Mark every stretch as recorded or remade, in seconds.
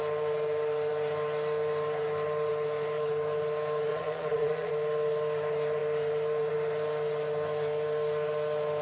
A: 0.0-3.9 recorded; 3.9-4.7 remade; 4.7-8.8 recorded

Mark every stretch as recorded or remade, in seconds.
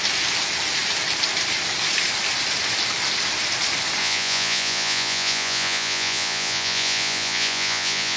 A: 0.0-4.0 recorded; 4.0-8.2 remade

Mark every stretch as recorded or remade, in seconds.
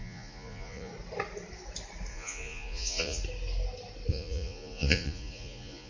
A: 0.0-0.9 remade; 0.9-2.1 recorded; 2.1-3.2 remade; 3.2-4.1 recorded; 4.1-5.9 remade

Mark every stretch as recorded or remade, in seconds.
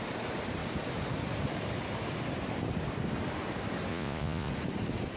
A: 0.0-3.9 recorded; 3.9-4.5 remade; 4.5-5.2 recorded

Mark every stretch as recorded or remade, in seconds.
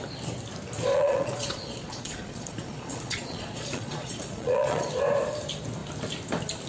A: 0.0-0.9 recorded; 0.9-4.9 remade; 4.9-6.7 recorded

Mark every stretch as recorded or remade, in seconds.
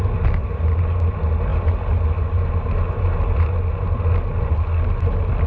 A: 0.0-5.5 recorded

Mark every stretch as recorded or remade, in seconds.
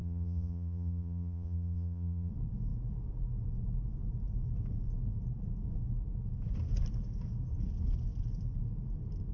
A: 0.0-2.3 remade; 2.3-9.3 recorded